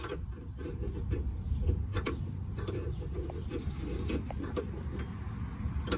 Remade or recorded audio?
recorded